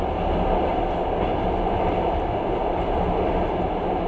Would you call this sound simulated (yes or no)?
no